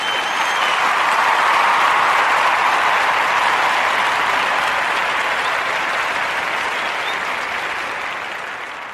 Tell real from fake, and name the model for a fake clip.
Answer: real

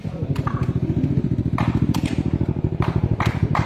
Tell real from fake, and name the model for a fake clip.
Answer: fake, vocoder, BigVGAN v2